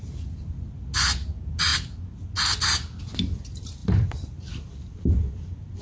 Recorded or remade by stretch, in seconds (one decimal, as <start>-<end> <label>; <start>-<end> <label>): 0.0-5.8 recorded

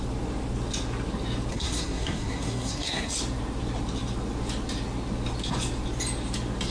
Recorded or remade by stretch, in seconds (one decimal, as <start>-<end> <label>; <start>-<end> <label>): 0.0-1.5 recorded; 1.5-3.1 remade; 3.1-6.7 recorded

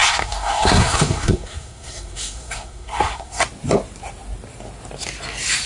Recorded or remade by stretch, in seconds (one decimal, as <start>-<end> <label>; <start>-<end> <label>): 0.0-3.4 remade; 3.4-5.7 recorded

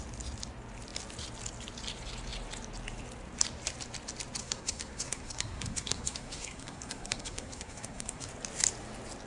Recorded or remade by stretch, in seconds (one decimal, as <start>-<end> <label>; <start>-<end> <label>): 0.0-4.4 recorded; 4.4-8.3 remade; 8.3-9.3 recorded